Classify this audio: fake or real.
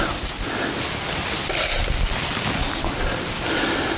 real